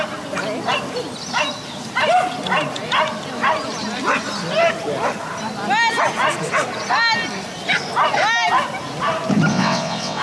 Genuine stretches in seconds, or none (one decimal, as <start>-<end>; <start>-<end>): 0.0-9.5